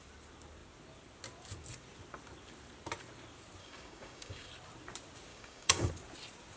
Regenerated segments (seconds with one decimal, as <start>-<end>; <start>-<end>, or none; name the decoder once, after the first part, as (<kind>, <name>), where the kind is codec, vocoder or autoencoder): 3.6-4.5 (codec, DAC); 5.3-5.9